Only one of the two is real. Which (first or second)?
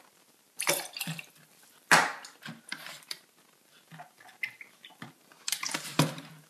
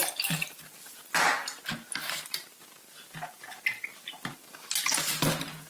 second